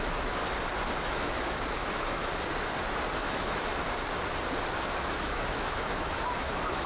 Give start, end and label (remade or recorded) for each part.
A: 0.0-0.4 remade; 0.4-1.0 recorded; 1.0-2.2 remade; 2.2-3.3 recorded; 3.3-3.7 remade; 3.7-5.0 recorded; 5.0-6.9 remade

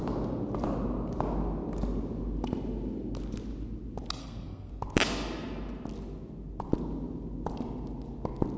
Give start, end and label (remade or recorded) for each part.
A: 0.0-4.2 recorded; 4.2-4.7 remade; 4.7-8.6 recorded

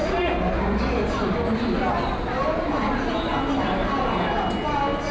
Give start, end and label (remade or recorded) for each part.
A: 0.0-5.1 recorded